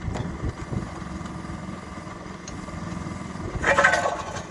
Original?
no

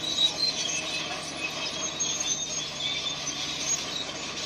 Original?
yes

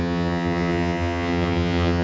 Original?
no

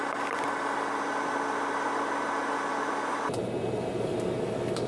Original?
yes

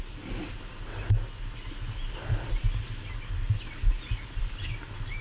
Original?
yes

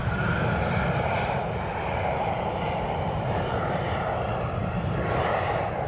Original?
no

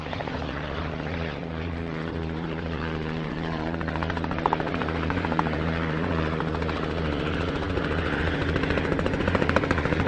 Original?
no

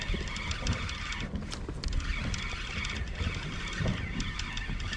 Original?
yes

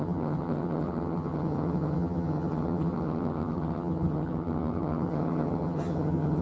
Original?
no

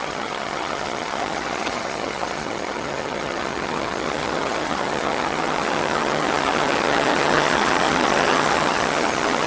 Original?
no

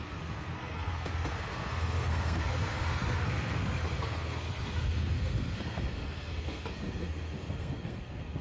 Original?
no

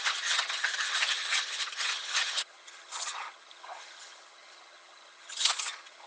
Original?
no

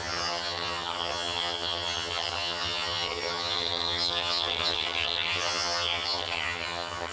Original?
no